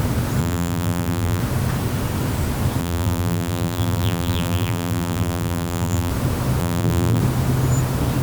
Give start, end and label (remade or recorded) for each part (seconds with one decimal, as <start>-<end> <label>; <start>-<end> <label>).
0.0-0.4 recorded; 0.4-1.4 remade; 1.4-2.8 recorded; 2.8-6.1 remade; 6.1-6.6 recorded; 6.6-7.2 remade; 7.2-8.2 recorded